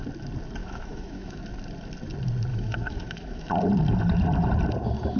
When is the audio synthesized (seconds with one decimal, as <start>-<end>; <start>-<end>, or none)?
0.6-1.4; 2.5-3.5